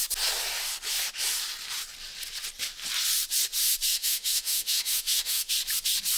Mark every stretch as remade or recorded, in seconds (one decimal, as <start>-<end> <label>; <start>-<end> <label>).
0.0-3.9 recorded; 3.9-5.5 remade; 5.5-6.2 recorded